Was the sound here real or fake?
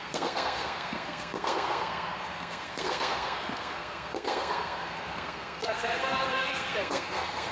fake